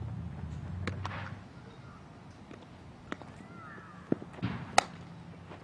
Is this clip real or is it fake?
real